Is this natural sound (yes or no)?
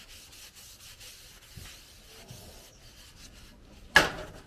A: yes